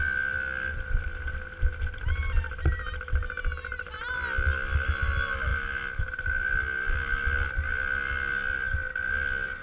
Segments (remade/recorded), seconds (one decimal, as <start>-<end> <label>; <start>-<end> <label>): 0.0-9.6 recorded